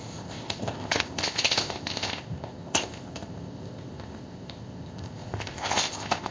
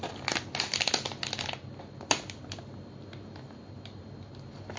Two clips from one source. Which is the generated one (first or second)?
first